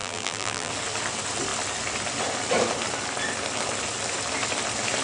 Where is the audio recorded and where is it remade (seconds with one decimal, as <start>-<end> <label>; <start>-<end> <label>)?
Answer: 0.0-0.7 remade; 0.7-5.0 recorded